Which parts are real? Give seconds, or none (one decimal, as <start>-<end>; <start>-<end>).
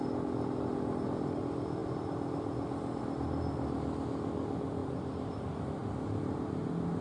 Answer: 0.0-4.8; 5.3-7.0